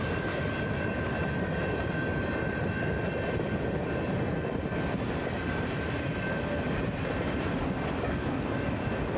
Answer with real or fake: fake